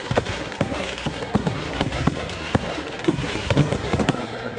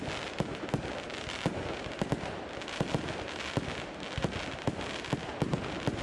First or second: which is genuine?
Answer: second